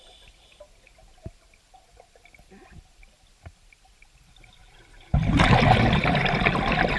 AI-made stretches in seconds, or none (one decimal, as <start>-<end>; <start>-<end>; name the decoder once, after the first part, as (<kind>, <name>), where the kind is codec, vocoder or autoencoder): none